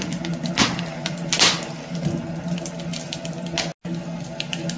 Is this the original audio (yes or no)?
yes